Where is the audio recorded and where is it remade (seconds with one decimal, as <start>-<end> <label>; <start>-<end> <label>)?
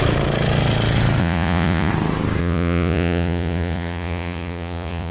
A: 0.0-1.2 recorded; 1.2-1.9 remade; 1.9-2.4 recorded; 2.4-5.1 remade